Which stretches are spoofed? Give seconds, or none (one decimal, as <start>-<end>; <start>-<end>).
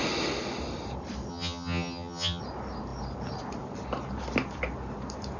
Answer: 1.3-2.4